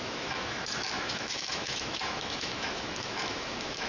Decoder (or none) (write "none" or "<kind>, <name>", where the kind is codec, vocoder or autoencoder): autoencoder, DAC-VAE